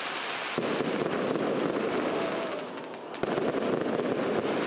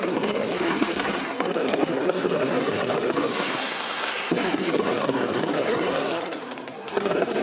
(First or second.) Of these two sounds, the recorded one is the first